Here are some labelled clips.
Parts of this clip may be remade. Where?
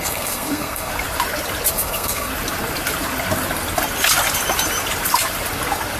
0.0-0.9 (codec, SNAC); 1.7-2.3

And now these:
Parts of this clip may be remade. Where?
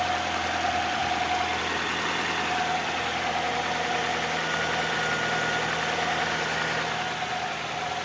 none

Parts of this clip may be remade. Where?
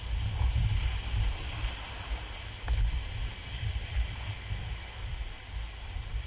4.6-5.1 (autoencoder, DAC-VAE)